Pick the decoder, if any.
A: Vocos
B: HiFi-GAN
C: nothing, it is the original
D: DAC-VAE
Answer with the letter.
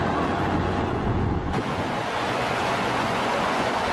A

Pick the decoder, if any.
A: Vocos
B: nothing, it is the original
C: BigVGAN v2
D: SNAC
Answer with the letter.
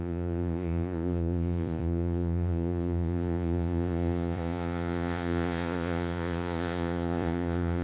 A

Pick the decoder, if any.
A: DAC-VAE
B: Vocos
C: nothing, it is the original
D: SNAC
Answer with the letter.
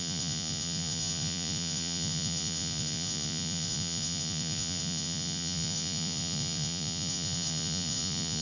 B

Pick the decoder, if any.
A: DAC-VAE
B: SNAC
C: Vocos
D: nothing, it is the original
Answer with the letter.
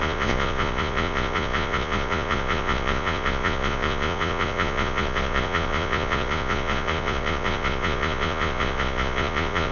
C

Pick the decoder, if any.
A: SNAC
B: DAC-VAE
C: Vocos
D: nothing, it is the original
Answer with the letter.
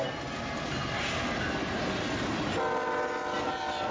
D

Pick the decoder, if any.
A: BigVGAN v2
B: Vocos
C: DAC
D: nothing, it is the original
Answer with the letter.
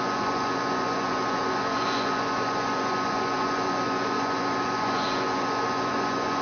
B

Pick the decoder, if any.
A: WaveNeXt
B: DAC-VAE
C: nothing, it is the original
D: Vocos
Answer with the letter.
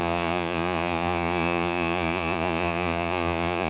D